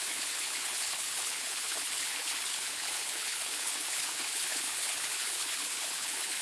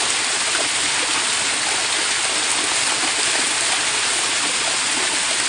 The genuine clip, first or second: second